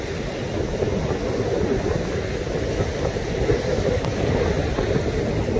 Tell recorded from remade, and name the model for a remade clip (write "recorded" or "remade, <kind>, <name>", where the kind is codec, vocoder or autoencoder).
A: recorded